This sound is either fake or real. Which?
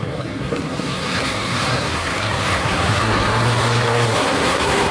fake